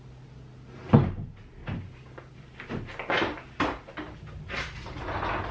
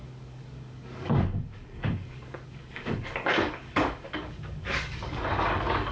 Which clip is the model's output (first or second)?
second